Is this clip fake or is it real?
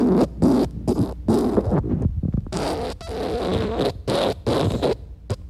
real